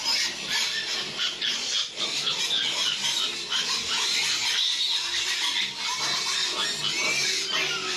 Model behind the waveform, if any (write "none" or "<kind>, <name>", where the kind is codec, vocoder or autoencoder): none